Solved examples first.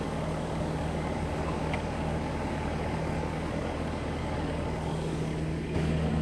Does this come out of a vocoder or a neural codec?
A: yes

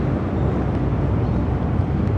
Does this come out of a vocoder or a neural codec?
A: no